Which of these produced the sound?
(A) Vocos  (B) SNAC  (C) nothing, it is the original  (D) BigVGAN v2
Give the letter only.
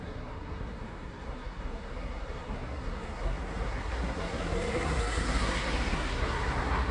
B